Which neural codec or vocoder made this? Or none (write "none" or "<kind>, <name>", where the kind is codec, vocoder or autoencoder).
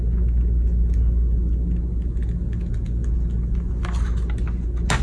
none